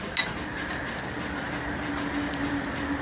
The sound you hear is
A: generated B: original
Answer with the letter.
B